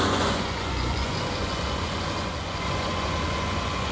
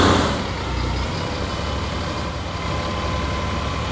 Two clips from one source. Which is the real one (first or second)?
second